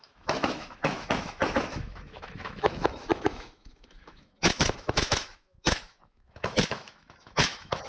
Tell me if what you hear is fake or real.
fake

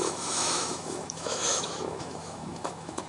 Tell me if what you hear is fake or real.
fake